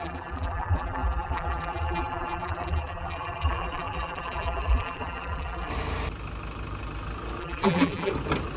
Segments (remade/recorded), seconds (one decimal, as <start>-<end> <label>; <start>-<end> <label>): 0.0-5.7 remade; 5.7-7.4 recorded; 7.4-8.1 remade; 8.1-8.6 recorded